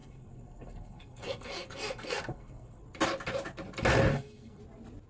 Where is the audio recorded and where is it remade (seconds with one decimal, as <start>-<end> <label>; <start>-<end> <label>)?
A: 0.0-2.8 remade; 2.8-4.1 recorded; 4.1-4.6 remade; 4.6-5.1 recorded